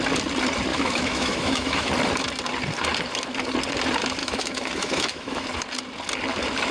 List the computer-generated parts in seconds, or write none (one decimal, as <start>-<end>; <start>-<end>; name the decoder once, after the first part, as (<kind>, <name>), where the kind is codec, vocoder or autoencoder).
0.7-1.9 (autoencoder, DAC-VAE); 4.2-5.5